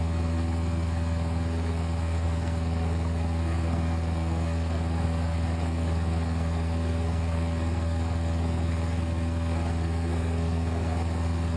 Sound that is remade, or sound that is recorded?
remade